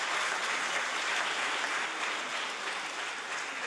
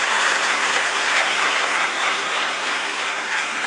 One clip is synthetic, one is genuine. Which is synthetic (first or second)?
second